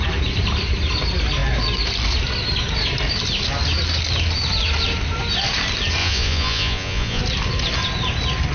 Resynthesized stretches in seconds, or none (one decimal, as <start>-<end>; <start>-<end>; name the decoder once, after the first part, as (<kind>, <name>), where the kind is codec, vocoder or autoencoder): 6.0-7.2 (vocoder, Vocos)

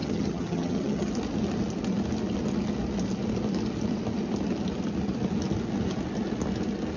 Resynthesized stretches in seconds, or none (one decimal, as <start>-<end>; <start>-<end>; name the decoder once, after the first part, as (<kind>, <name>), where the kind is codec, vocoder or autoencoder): 0.0-1.1 (vocoder, HiFi-GAN)

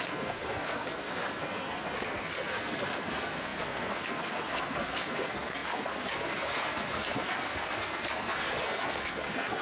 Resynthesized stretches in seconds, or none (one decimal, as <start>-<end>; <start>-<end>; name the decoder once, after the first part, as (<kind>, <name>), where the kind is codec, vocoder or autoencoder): 0.0-9.6 (codec, SNAC)

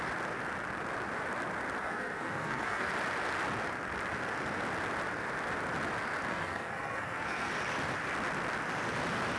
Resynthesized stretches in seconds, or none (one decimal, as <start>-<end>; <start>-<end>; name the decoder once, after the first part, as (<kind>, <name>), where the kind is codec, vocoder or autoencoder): 1.8-2.9 (codec, SNAC); 6.3-7.5

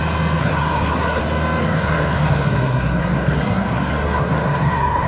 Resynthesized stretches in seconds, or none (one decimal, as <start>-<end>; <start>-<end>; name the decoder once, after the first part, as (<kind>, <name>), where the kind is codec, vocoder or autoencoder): 0.4-1.2 (codec, SNAC); 1.6-5.1

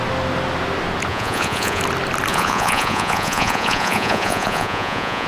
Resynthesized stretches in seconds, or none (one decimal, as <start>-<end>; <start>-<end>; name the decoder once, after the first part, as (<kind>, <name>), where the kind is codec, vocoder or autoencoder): 1.1-1.8 (vocoder, Vocos); 2.3-5.3